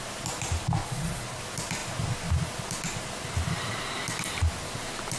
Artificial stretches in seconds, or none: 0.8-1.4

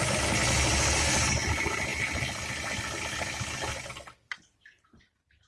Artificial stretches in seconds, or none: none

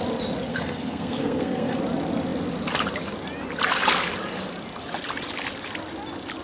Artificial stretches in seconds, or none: 0.5-1.8

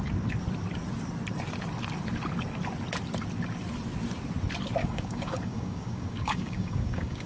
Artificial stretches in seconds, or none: 4.8-7.3